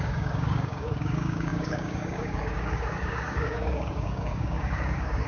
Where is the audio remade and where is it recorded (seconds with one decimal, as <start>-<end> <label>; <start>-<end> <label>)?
0.0-5.3 remade

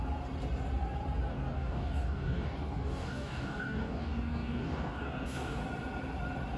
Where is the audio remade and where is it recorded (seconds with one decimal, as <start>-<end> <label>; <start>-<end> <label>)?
0.0-1.3 recorded; 1.3-5.6 remade; 5.6-6.6 recorded

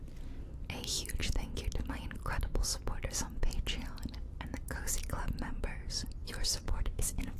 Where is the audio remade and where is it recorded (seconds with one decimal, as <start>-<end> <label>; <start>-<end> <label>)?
0.0-6.2 recorded; 6.2-7.4 remade